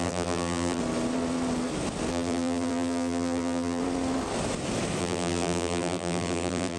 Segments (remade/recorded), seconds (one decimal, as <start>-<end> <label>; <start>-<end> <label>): 0.0-0.8 remade; 0.8-2.1 recorded; 2.1-3.8 remade; 3.8-5.0 recorded; 5.0-6.8 remade